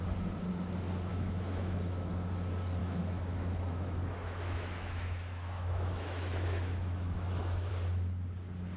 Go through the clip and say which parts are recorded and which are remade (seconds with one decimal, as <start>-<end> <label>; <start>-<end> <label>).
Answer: 0.0-1.1 recorded; 1.1-2.1 remade; 2.1-2.8 recorded; 2.8-7.7 remade; 7.7-8.8 recorded